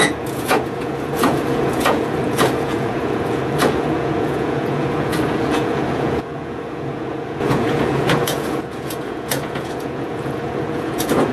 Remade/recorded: remade